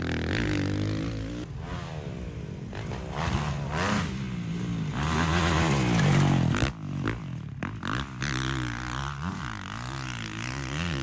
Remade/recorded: recorded